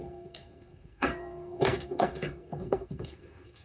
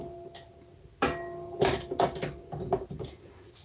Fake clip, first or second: first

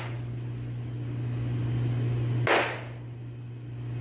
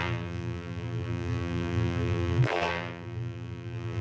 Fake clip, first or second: second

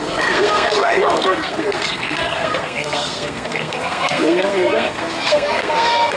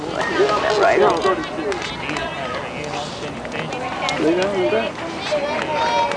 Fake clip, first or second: first